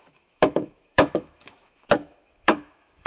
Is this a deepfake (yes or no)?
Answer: yes